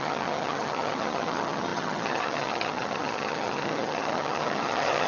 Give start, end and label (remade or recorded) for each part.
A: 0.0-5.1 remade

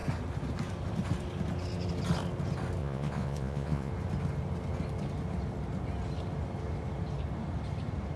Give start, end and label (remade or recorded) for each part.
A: 0.0-2.8 recorded; 2.8-3.9 remade; 3.9-8.2 recorded

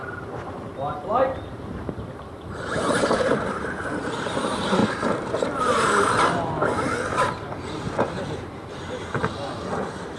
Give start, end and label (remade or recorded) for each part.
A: 0.0-9.2 remade; 9.2-10.2 recorded

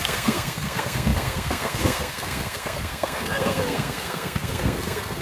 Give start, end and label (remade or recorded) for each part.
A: 0.0-5.2 remade

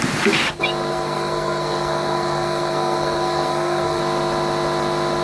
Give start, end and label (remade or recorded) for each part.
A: 0.0-0.9 recorded; 0.9-4.0 remade; 4.0-5.2 recorded

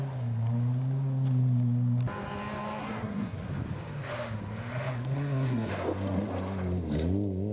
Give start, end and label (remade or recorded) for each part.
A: 0.0-2.8 recorded; 2.8-3.5 remade; 3.5-4.9 recorded; 4.9-5.7 remade; 5.7-7.5 recorded

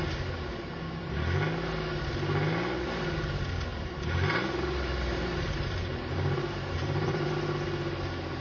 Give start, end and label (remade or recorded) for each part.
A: 0.0-3.7 recorded; 3.7-7.3 remade; 7.3-8.4 recorded

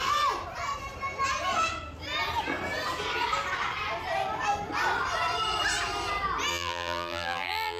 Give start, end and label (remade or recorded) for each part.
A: 0.0-6.5 recorded; 6.5-7.8 remade